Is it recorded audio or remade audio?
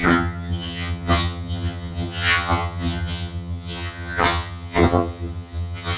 remade